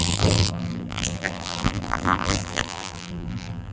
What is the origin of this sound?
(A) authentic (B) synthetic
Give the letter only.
B